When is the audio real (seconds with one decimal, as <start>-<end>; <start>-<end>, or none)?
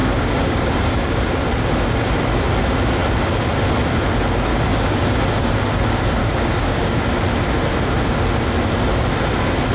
1.2-4.5; 5.5-6.2; 7.1-9.7